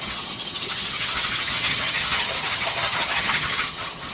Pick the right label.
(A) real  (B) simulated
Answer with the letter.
B